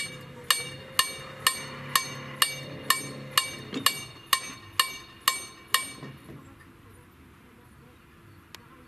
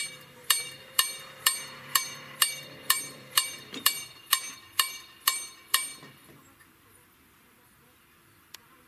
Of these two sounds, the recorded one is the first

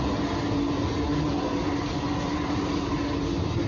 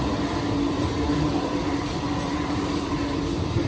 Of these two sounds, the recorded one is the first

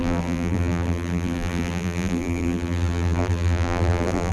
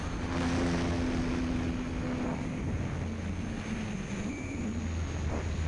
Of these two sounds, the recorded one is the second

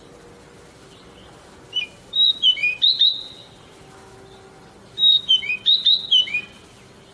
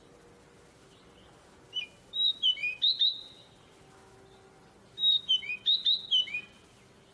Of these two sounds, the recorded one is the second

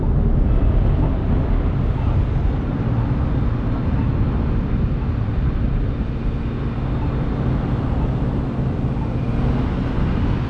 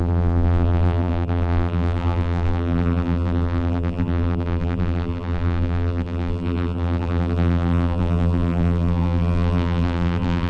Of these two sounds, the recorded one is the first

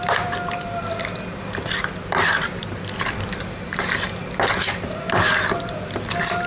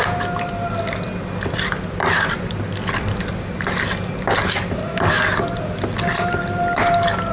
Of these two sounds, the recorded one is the second